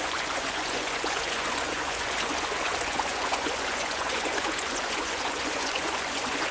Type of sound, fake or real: fake